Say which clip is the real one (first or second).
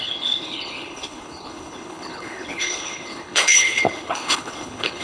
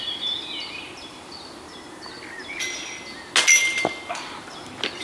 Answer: second